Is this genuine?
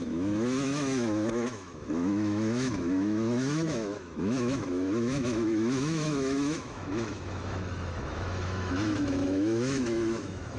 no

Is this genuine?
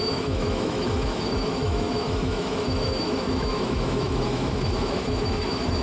no